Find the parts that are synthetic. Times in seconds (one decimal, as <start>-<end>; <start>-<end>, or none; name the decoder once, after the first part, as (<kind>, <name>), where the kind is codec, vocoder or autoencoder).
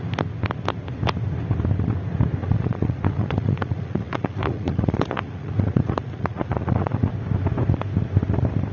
2.4-7.1 (vocoder, Vocos)